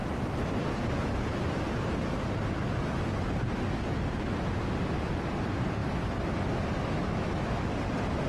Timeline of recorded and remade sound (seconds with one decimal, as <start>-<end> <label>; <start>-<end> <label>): 0.0-7.0 recorded; 7.0-7.7 remade; 7.7-8.3 recorded